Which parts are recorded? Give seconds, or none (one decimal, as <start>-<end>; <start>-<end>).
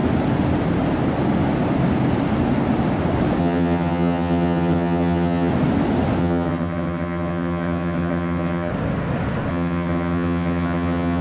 0.0-3.4; 5.5-6.2; 8.7-9.5